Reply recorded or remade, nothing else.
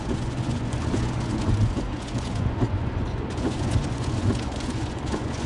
remade